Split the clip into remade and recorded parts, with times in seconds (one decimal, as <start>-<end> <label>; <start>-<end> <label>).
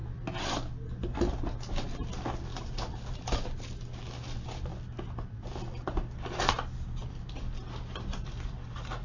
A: 0.0-2.5 recorded; 2.5-3.6 remade; 3.6-4.7 recorded; 4.7-5.5 remade; 5.5-9.0 recorded